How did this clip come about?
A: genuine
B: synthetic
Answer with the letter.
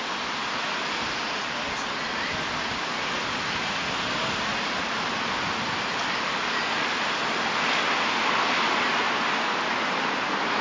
A